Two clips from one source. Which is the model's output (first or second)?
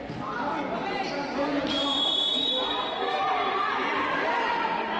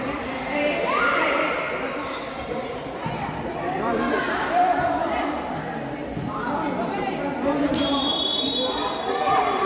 second